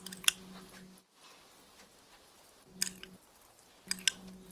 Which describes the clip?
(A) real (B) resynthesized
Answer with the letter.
A